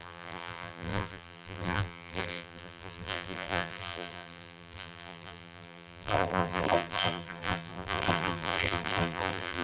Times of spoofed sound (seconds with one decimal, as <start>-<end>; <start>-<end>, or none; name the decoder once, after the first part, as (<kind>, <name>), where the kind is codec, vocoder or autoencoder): 0.0-9.6 (vocoder, BigVGAN v2)